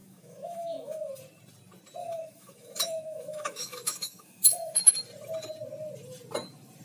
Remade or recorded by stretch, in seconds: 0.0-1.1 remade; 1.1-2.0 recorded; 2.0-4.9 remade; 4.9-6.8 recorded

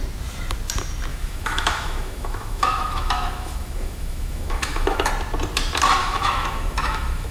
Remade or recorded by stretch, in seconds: 0.0-1.1 recorded; 1.1-5.1 remade; 5.1-6.0 recorded; 6.0-7.3 remade

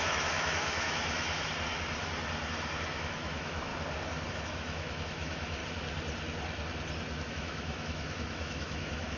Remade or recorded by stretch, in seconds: 0.0-1.5 remade; 1.5-2.9 recorded; 2.9-3.7 remade; 3.7-4.3 recorded; 4.3-5.6 remade; 5.6-7.3 recorded; 7.3-9.2 remade

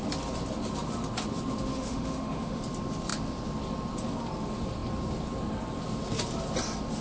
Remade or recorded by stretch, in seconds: 0.0-1.7 recorded; 1.7-2.6 remade; 2.6-7.0 recorded

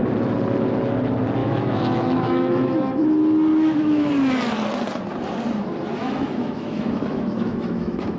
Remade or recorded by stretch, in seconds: 0.0-1.4 recorded; 1.4-3.1 remade; 3.1-3.5 recorded; 3.5-4.1 remade; 4.1-6.0 recorded; 6.0-8.2 remade

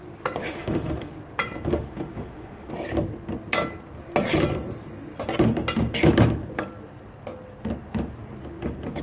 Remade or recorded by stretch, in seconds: 0.0-0.4 recorded; 0.4-1.1 remade; 1.1-1.7 recorded; 1.7-2.7 remade; 2.7-9.0 recorded

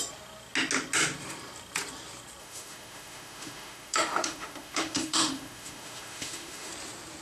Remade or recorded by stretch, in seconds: 0.0-2.4 recorded; 2.4-6.7 remade; 6.7-7.2 recorded

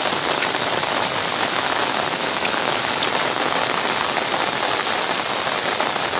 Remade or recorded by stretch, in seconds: 0.0-1.3 recorded; 1.3-2.9 remade; 2.9-6.2 recorded